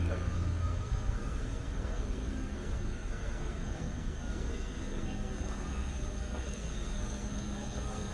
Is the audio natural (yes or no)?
no